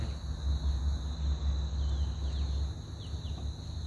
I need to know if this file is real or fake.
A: real